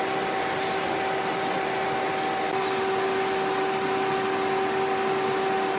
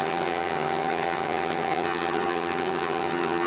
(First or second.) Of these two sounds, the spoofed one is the second